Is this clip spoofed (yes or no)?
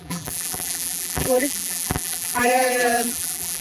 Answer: yes